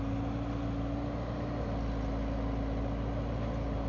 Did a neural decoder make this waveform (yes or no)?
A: no